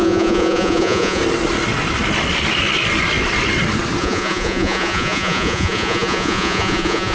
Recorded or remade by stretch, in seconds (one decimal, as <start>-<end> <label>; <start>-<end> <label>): 0.0-1.2 remade; 1.2-4.0 recorded; 4.0-7.1 remade

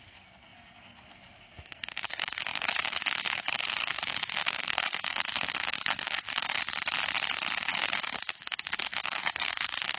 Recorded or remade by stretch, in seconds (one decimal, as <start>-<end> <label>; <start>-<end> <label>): 0.0-6.4 remade; 6.4-7.6 recorded; 7.6-10.0 remade

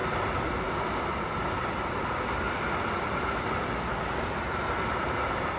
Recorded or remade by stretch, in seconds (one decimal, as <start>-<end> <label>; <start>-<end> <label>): 0.0-5.6 recorded

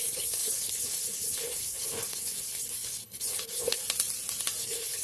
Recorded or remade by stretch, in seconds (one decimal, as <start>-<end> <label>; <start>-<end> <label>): 0.0-3.8 remade; 3.8-4.6 recorded; 4.6-5.0 remade